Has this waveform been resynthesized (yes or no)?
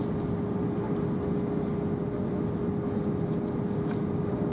no